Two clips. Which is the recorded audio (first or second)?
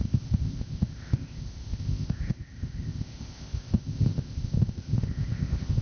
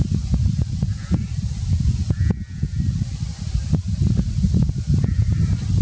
second